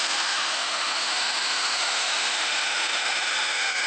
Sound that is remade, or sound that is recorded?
remade